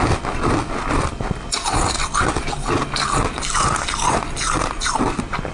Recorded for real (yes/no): yes